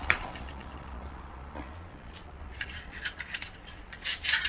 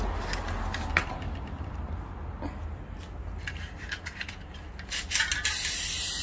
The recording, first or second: second